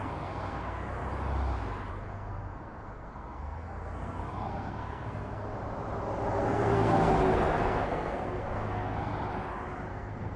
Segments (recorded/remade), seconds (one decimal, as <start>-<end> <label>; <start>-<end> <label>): 0.0-1.0 remade; 1.0-1.9 recorded; 1.9-5.5 remade; 5.5-6.3 recorded; 6.3-9.1 remade; 9.1-9.9 recorded; 9.9-10.4 remade